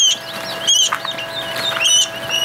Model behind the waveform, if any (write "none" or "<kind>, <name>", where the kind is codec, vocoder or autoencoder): none